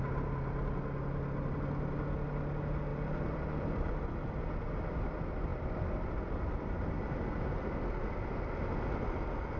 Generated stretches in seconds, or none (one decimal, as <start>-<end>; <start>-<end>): 2.9-4.0; 5.5-7.2